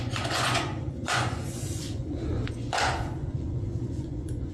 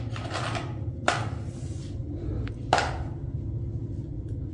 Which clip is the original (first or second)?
second